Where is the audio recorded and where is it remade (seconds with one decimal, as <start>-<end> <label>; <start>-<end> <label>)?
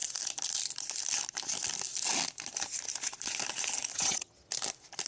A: 0.0-3.9 recorded; 3.9-4.5 remade; 4.5-5.1 recorded